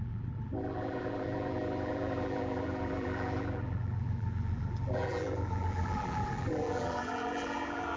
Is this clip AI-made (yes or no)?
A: yes